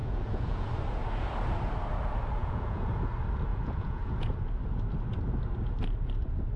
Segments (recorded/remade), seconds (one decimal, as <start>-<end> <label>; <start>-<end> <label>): 0.0-0.7 remade; 0.7-2.4 recorded; 2.4-2.9 remade; 2.9-3.5 recorded; 3.5-4.5 remade; 4.5-6.6 recorded